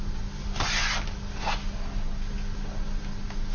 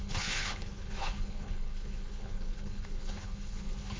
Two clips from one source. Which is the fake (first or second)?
second